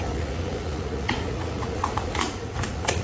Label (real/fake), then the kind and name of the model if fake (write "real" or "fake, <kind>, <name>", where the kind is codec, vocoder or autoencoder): fake, vocoder, Vocos